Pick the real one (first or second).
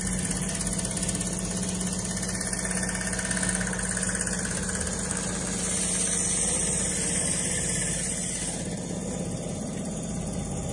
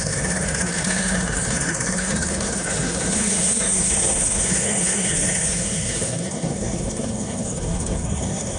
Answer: first